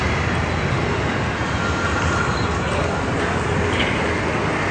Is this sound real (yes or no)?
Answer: yes